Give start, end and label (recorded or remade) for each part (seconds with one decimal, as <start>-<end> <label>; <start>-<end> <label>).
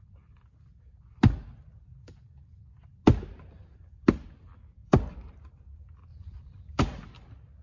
0.0-4.8 recorded; 4.8-5.3 remade; 5.3-6.1 recorded; 6.1-6.8 remade; 6.8-7.6 recorded